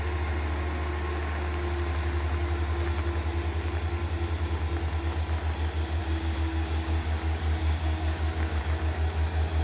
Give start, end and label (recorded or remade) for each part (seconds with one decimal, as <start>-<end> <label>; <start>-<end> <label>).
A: 0.0-6.0 recorded; 6.0-8.6 remade; 8.6-9.6 recorded